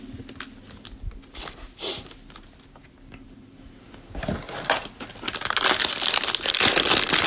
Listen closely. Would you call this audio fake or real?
real